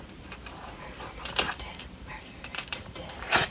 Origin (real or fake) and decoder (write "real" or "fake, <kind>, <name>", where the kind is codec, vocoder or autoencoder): fake, vocoder, BigVGAN v2